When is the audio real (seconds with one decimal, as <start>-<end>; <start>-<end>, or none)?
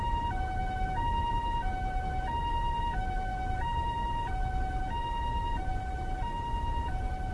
0.0-7.3